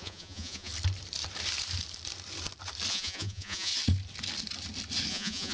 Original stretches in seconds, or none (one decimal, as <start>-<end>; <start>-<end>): 0.7-2.9; 3.7-5.1